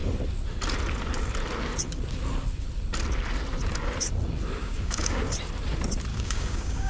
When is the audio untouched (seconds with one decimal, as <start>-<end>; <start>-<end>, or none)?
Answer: 0.0-4.6; 5.2-6.1